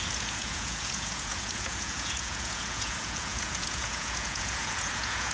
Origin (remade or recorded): remade